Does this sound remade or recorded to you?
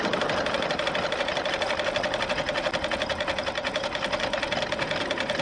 recorded